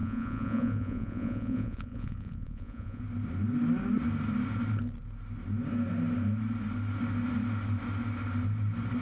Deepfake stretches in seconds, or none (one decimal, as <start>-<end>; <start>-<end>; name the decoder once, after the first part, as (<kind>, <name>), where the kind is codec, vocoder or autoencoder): 0.0-3.0 (vocoder, Vocos)

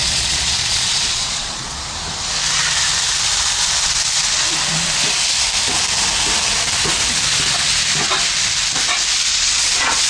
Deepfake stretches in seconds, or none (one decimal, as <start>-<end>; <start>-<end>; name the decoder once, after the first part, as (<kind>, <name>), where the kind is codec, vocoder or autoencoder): 0.0-1.8 (vocoder, Vocos); 9.3-10.1

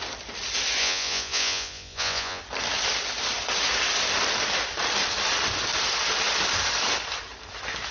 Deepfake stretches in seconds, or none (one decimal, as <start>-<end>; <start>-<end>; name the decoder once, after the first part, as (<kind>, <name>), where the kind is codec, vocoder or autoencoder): 0.8-2.4 (vocoder, Vocos)

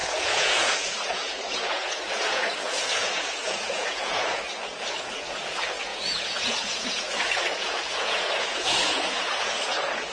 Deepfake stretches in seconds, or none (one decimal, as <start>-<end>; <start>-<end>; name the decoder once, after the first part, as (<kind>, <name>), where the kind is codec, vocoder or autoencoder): 0.0-10.1 (vocoder, Vocos)

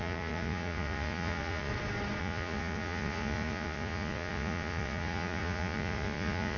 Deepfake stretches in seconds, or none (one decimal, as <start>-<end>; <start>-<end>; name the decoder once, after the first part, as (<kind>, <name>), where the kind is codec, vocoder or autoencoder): 0.0-1.7 (vocoder, Vocos); 2.2-6.6

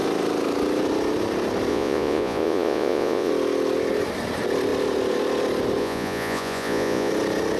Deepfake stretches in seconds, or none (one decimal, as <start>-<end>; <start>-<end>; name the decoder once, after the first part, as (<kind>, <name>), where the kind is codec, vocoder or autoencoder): 1.7-3.3 (vocoder, Vocos); 5.8-7.1

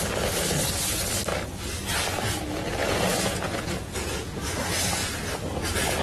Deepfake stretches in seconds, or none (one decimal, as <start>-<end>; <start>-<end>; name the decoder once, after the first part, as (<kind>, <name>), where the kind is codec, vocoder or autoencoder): 2.8-4.3 (vocoder, Vocos)

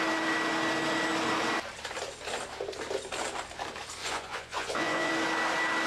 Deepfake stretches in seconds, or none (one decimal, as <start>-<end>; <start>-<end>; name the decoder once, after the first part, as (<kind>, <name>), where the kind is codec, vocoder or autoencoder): 4.0-5.1 (vocoder, Vocos)